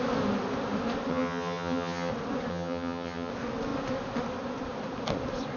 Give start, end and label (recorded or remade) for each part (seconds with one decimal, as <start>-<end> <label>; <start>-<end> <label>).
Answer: 0.0-1.1 recorded; 1.1-2.1 remade; 2.1-2.5 recorded; 2.5-3.3 remade; 3.3-5.6 recorded